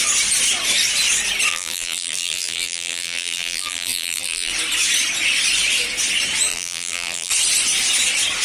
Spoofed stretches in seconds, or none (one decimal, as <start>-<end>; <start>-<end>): 1.5-4.5; 6.5-7.3

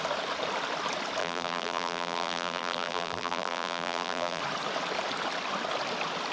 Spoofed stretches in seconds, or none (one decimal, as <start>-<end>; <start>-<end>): 1.2-4.4

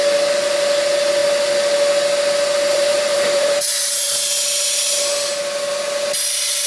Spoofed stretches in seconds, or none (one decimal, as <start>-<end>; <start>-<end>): 2.7-4.1

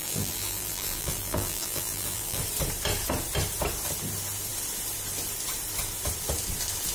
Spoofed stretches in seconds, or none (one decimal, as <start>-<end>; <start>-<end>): 0.0-2.4

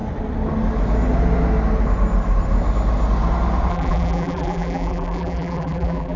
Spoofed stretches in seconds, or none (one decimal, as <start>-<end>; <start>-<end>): 3.7-6.2

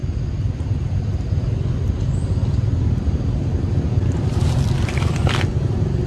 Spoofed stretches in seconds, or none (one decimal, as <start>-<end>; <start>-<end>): 3.7-6.1

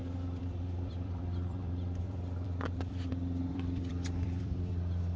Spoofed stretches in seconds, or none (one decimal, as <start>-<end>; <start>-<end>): 0.0-3.1; 3.5-4.7